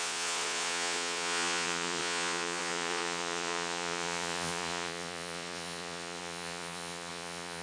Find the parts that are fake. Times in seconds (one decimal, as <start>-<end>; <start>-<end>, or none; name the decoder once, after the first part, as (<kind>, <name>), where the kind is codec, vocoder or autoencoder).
0.0-7.6 (vocoder, Vocos)